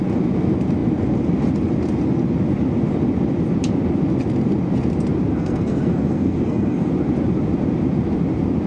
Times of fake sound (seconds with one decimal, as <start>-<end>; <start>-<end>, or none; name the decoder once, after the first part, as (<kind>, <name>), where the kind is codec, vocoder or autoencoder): 5.3-6.9 (codec, SNAC)